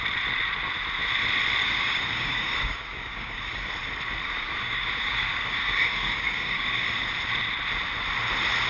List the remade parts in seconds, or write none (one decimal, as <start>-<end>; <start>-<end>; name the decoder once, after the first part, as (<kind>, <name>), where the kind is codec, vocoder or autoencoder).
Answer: 1.6-3.7 (codec, DAC); 4.2-7.1